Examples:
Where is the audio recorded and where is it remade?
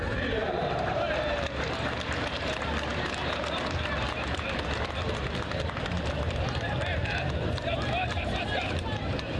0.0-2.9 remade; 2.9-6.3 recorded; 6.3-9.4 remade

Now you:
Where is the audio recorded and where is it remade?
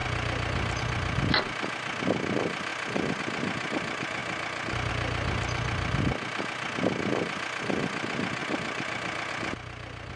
0.0-10.2 recorded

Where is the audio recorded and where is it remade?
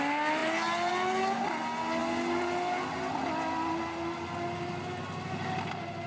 0.0-6.1 recorded